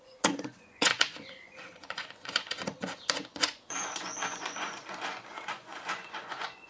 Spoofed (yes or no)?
yes